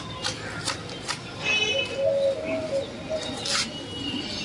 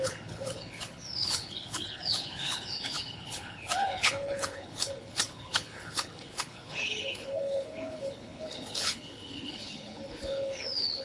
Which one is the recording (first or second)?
first